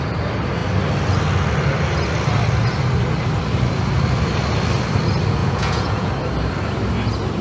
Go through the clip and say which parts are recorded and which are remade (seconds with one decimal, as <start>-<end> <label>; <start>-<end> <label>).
0.0-5.4 recorded; 5.4-6.1 remade; 6.1-7.4 recorded